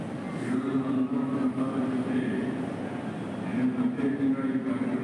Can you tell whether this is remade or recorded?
recorded